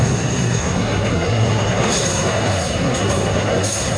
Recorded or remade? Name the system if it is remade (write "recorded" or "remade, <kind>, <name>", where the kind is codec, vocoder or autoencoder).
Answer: remade, codec, SNAC